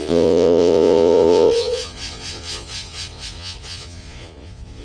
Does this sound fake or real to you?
fake